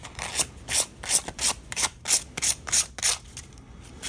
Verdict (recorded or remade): recorded